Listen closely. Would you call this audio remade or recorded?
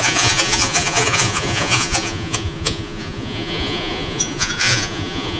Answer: remade